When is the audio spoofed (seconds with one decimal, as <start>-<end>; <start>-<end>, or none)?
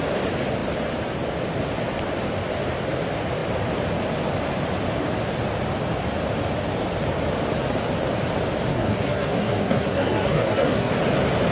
8.7-10.9